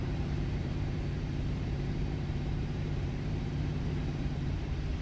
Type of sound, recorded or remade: remade